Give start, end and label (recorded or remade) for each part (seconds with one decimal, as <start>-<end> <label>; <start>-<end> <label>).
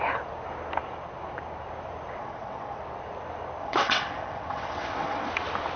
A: 0.0-2.2 recorded; 2.2-2.8 remade; 2.8-3.6 recorded; 3.6-5.3 remade; 5.3-5.8 recorded